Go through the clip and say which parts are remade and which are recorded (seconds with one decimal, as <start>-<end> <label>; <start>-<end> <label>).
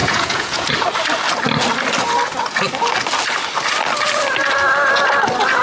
0.0-0.7 remade; 0.7-5.6 recorded